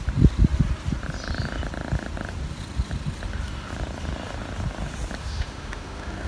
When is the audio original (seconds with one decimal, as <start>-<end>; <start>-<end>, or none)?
0.0-5.2